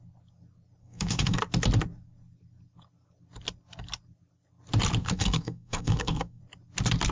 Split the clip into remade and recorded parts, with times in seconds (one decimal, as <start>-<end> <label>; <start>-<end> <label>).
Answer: 0.0-0.8 recorded; 0.8-1.4 remade; 1.4-5.0 recorded; 5.0-6.4 remade; 6.4-7.1 recorded